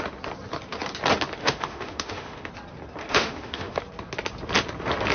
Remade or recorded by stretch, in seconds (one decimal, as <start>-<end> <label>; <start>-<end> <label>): 0.0-1.4 recorded; 1.4-2.5 remade; 2.5-3.0 recorded; 3.0-3.8 remade; 3.8-5.1 recorded